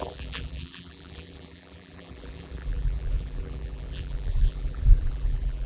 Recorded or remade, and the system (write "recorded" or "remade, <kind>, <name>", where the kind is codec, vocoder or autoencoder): remade, vocoder, BigVGAN v2